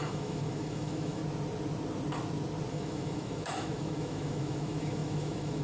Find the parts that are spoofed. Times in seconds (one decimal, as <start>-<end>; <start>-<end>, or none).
0.0-1.2; 2.7-5.6

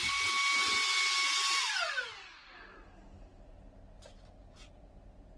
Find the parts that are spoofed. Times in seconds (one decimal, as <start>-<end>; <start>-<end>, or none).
none

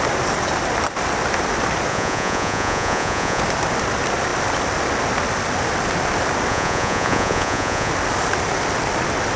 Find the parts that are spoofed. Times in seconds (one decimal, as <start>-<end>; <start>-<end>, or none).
1.9-3.4; 6.5-7.9

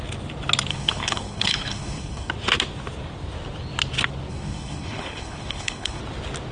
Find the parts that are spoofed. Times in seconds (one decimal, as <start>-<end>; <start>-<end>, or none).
0.7-2.3; 4.3-6.0

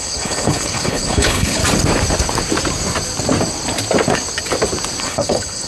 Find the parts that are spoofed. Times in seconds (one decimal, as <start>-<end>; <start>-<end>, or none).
0.0-1.6; 5.0-5.7

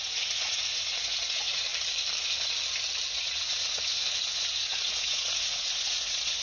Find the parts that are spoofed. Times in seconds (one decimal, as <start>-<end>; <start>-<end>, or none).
0.0-1.7; 3.1-6.4